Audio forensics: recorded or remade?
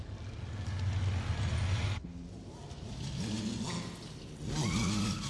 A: recorded